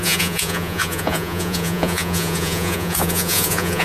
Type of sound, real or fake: fake